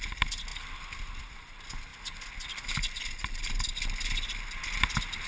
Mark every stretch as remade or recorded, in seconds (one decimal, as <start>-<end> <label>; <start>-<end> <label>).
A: 0.0-5.3 recorded